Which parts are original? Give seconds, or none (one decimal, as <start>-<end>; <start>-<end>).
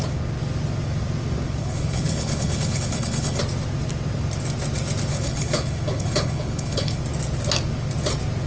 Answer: 0.0-1.6; 3.4-5.1; 7.0-8.5